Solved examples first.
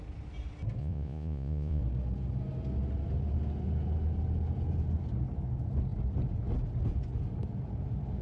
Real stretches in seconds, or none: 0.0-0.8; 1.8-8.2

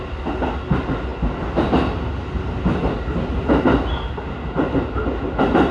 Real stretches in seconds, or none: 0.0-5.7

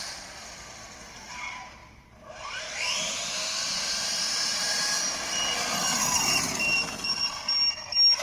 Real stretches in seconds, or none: 0.0-8.2

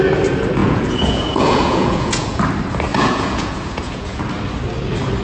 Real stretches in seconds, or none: 0.0-0.6; 2.4-2.9; 4.2-5.2

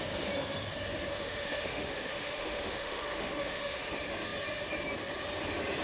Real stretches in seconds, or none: 0.0-1.1; 3.9-5.8

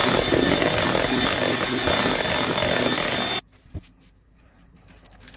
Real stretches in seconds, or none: 0.0-5.4